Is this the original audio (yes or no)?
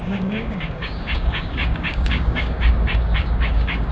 no